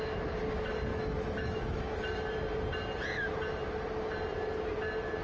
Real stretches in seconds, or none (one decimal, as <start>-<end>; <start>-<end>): 0.0-0.9; 2.0-5.2